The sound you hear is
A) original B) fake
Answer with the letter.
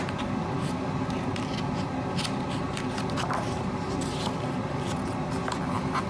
A